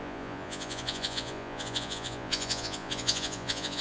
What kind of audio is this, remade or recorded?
remade